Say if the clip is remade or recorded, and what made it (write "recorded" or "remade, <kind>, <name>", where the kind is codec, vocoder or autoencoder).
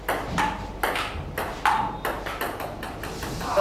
recorded